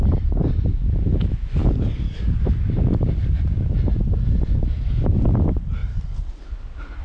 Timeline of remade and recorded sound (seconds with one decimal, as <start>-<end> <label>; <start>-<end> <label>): 0.0-1.6 recorded; 1.6-3.4 remade; 3.4-7.0 recorded